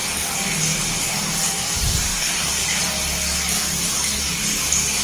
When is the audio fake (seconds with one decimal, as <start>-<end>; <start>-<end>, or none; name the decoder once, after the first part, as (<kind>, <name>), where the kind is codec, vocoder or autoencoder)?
2.1-2.8 (codec, DAC)